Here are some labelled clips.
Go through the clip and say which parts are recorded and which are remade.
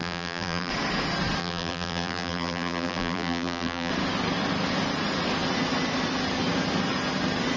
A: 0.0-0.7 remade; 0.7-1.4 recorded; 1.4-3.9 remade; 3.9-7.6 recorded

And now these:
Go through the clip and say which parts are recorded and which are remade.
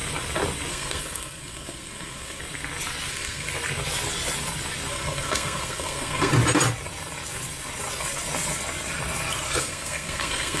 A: 0.0-0.7 recorded; 0.7-2.4 remade; 2.4-3.1 recorded; 3.1-3.5 remade; 3.5-4.9 recorded; 4.9-6.3 remade; 6.3-9.6 recorded; 9.6-10.6 remade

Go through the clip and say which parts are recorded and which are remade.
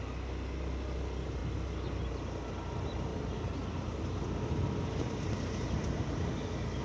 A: 0.0-3.1 recorded; 3.1-4.0 remade; 4.0-6.8 recorded